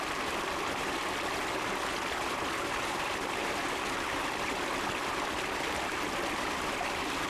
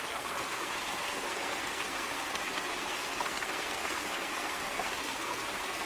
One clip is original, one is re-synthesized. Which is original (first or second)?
first